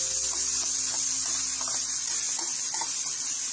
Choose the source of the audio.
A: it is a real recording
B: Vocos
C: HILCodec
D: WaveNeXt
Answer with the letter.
A